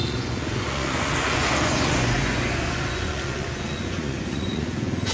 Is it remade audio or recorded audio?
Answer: remade